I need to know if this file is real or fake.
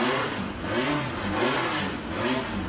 real